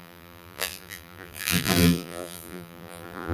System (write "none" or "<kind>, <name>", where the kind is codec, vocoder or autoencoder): vocoder, BigVGAN v2